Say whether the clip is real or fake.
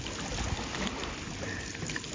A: real